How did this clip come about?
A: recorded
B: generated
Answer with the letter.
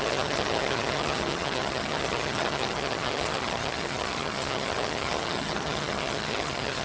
B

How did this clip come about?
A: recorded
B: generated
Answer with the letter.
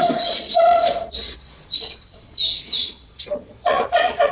B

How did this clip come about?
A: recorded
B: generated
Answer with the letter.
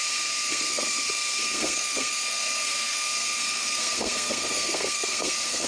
B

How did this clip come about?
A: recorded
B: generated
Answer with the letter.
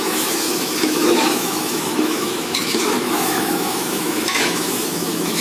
B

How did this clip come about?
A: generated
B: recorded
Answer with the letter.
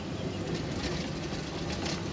B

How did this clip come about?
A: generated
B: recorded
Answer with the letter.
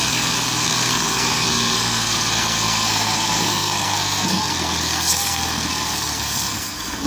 A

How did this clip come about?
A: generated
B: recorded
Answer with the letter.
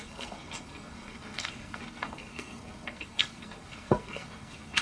A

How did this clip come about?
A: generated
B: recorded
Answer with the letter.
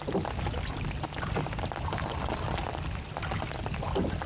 B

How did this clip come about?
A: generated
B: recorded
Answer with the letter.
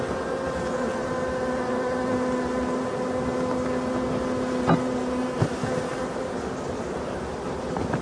B